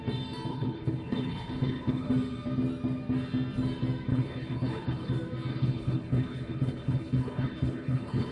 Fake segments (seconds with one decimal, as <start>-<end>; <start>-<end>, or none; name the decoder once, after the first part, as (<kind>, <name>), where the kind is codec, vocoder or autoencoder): 0.5-2.1 (codec, HILCodec); 4.1-5.1; 5.5-8.3